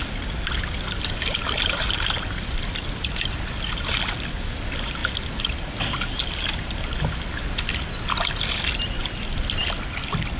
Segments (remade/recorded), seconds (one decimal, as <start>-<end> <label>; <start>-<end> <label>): 0.0-10.4 recorded